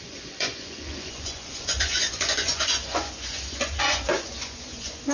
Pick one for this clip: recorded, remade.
remade